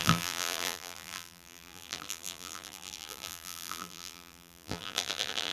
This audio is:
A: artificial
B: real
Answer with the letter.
A